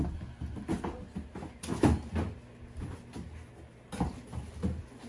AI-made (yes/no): no